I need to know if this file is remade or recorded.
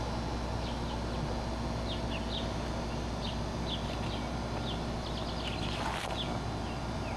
recorded